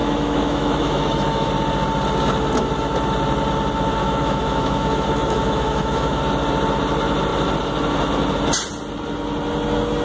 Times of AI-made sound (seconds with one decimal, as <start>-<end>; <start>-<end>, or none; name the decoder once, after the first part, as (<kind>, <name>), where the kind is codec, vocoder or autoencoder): 0.0-1.5 (autoencoder, DAC-VAE); 4.0-6.2